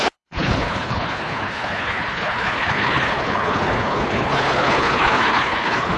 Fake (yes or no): yes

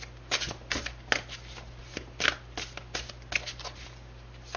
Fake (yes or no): no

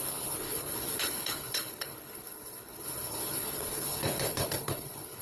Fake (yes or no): yes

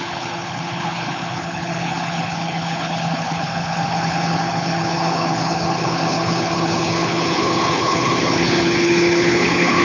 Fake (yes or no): yes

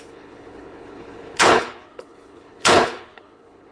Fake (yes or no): yes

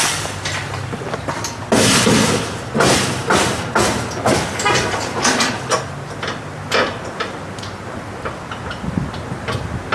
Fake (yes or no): no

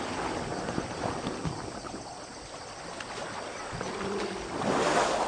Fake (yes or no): no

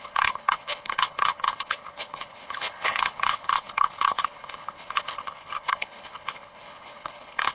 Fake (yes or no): yes